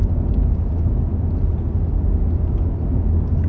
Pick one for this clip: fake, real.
real